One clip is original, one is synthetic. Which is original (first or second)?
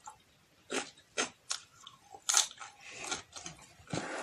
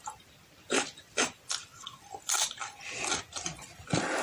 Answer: first